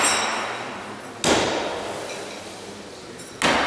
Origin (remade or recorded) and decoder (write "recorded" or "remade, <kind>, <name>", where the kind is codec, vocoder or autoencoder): recorded